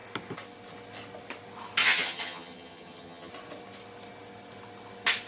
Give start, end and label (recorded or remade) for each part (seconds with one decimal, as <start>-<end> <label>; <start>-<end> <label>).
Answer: 0.0-1.8 recorded; 1.8-3.3 remade; 3.3-5.3 recorded